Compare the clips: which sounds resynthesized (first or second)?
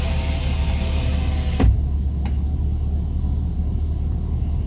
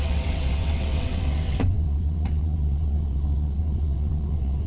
second